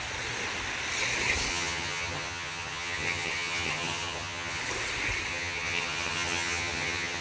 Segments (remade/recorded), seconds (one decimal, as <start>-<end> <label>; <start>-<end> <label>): 0.0-1.5 recorded; 1.5-4.6 remade; 4.6-5.3 recorded; 5.3-7.2 remade